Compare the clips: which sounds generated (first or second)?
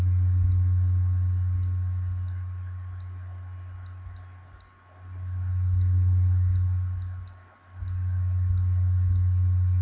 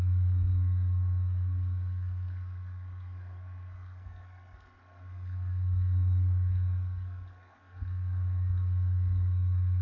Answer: second